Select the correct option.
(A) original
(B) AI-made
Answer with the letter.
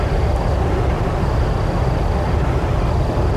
A